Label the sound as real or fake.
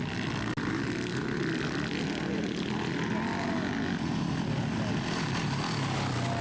real